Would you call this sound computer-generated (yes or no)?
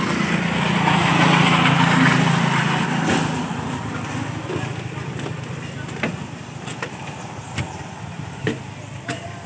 no